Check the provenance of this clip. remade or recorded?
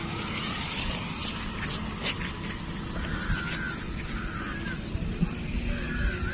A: recorded